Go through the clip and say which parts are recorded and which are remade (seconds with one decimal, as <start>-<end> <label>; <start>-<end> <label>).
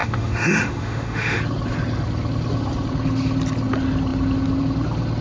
0.0-1.4 remade; 1.4-5.2 recorded